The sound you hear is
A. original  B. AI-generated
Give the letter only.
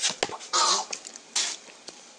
A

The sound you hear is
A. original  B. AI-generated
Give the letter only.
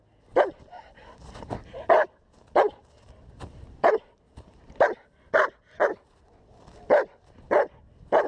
A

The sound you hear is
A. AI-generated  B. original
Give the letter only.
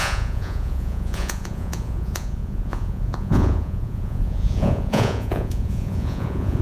A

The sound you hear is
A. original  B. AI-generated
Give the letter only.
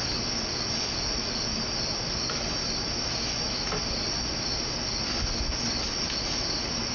A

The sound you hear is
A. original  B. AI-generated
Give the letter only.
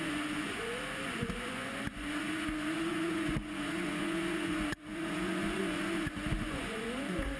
B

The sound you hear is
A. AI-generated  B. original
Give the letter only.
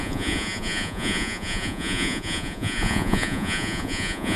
A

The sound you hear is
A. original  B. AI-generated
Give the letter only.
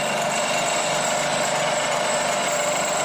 A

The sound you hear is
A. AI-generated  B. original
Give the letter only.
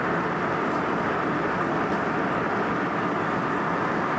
B